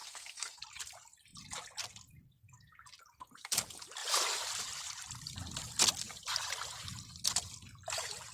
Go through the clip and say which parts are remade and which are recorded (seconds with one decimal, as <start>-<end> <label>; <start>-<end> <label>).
0.0-0.6 remade; 0.6-8.3 recorded